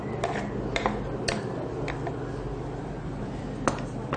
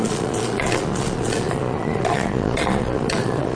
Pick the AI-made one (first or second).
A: second